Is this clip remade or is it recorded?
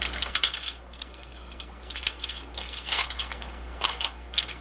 remade